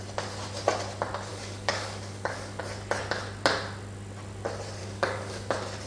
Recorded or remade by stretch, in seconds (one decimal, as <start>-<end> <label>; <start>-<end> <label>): 0.0-1.3 recorded; 1.3-2.6 remade; 2.6-4.8 recorded; 4.8-5.5 remade; 5.5-5.9 recorded